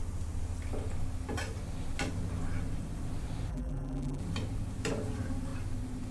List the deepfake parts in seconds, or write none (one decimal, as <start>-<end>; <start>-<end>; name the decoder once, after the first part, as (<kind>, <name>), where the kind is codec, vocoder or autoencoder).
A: 3.5-4.2 (vocoder, BigVGAN v2)